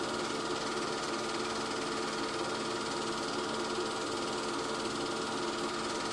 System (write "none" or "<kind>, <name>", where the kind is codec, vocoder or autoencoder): none